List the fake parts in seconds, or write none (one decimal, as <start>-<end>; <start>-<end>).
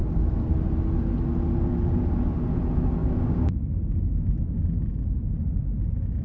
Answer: 3.0-4.4